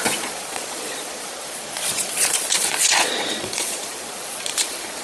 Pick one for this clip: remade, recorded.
remade